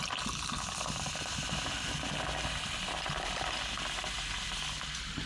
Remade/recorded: recorded